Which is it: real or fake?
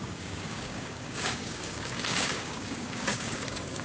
fake